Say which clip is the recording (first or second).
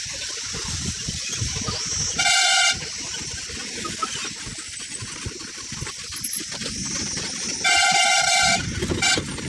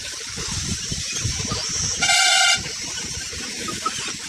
first